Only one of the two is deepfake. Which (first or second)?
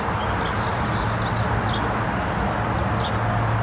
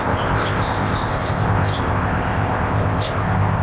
second